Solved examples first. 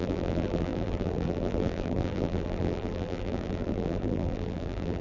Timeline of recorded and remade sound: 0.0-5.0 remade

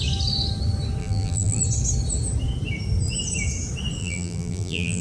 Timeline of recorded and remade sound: 0.0-1.0 recorded; 1.0-1.6 remade; 1.6-4.0 recorded; 4.0-5.0 remade

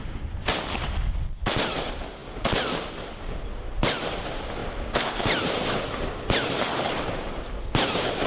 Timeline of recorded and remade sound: 0.0-4.6 recorded; 4.6-8.3 remade

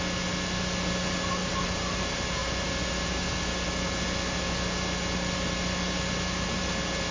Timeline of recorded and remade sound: 0.0-1.4 recorded; 1.4-2.0 remade; 2.0-7.1 recorded

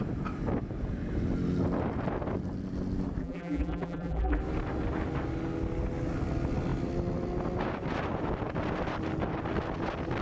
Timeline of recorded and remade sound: 0.0-3.2 recorded; 3.2-4.4 remade; 4.4-10.2 recorded

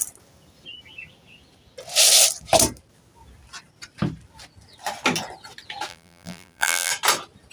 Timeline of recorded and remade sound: 0.0-5.9 recorded; 5.9-6.9 remade; 6.9-7.5 recorded

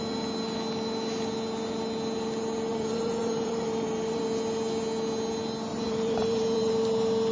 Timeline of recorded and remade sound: 0.0-2.7 recorded; 2.7-4.2 remade; 4.2-5.7 recorded; 5.7-6.7 remade; 6.7-7.3 recorded